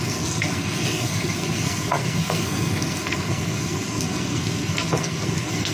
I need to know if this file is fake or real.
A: fake